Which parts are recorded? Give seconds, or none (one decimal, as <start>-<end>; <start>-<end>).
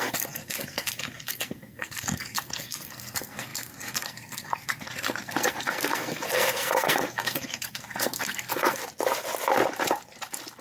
8.8-10.6